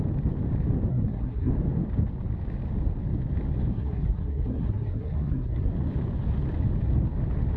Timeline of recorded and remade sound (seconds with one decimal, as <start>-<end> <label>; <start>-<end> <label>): 0.0-0.9 recorded; 0.9-1.5 remade; 1.5-3.7 recorded; 3.7-5.7 remade; 5.7-7.6 recorded